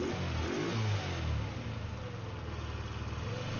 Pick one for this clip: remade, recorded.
recorded